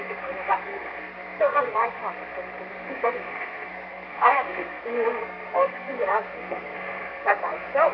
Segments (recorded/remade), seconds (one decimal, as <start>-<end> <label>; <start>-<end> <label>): 0.0-2.0 remade; 2.0-2.7 recorded; 2.7-7.9 remade